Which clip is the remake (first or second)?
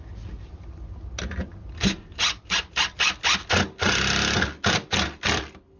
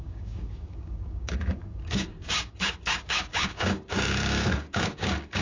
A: second